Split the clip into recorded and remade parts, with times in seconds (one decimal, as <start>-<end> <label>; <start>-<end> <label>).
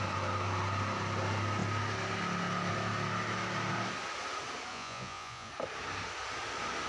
0.0-4.7 recorded; 4.7-5.5 remade; 5.5-6.9 recorded